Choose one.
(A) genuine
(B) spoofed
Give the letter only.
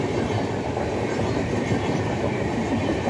B